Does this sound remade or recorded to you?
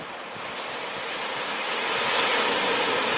recorded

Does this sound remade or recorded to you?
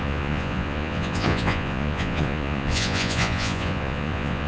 remade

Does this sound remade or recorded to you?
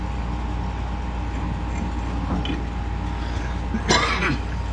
recorded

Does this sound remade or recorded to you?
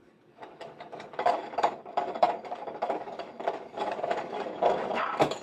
remade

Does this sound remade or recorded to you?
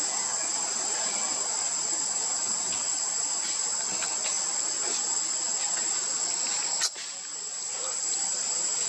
recorded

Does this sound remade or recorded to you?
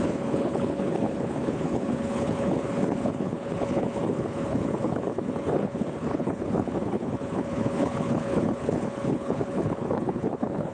remade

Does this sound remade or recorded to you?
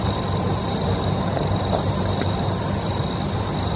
recorded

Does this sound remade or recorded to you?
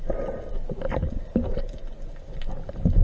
recorded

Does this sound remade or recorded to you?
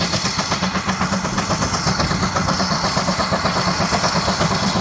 recorded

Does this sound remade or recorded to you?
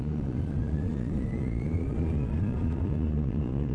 remade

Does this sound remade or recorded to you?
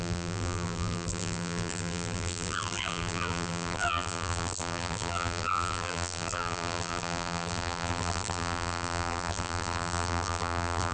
remade